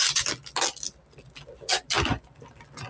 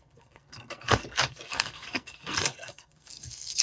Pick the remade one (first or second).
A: second